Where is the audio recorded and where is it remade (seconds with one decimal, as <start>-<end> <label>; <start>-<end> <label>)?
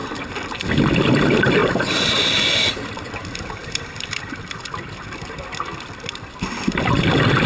0.0-3.6 recorded; 3.6-4.9 remade; 4.9-7.5 recorded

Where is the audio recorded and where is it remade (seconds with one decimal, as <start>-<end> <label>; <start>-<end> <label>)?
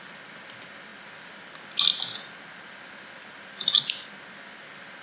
0.0-5.0 recorded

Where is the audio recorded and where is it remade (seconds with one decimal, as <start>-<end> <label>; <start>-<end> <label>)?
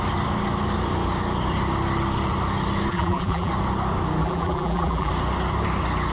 0.0-2.9 recorded; 2.9-3.5 remade; 3.5-4.2 recorded; 4.2-5.1 remade; 5.1-6.1 recorded